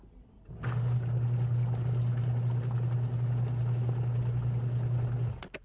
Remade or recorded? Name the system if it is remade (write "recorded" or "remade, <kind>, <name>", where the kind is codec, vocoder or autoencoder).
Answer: recorded